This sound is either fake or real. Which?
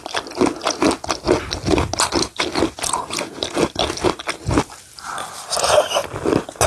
real